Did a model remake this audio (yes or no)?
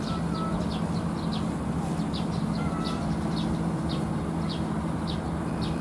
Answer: no